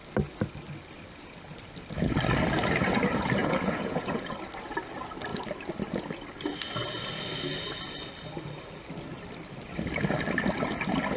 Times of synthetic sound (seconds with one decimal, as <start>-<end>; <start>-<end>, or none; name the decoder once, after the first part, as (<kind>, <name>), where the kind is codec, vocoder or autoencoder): 3.4-4.3 (vocoder, Vocos)